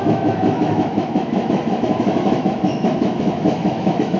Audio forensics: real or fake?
fake